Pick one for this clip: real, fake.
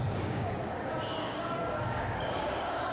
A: fake